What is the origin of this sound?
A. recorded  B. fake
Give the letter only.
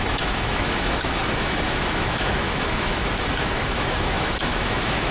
B